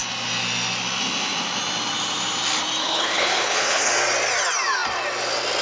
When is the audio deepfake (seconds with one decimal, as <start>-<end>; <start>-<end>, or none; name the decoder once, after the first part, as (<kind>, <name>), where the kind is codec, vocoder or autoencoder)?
2.8-3.9 (codec, HILCodec)